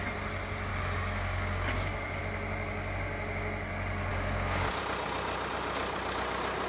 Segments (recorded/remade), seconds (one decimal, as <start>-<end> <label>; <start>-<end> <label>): 0.0-0.7 recorded; 0.7-2.2 remade; 2.2-4.1 recorded; 4.1-4.8 remade; 4.8-6.7 recorded